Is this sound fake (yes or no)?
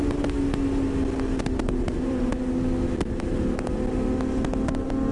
no